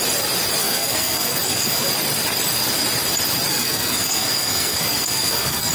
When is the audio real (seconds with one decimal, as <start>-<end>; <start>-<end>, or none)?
0.0-0.6; 1.9-3.5